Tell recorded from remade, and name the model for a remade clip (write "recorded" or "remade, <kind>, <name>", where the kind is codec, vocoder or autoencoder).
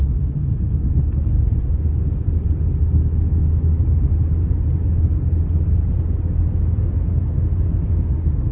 recorded